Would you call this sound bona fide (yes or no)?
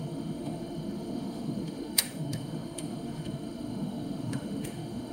no